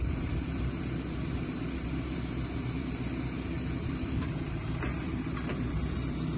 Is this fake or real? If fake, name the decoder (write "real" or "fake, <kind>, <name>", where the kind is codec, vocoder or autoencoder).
fake, vocoder, BigVGAN v2